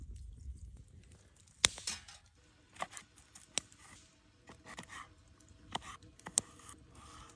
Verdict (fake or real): real